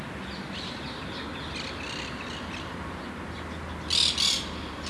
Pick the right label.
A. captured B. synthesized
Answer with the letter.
A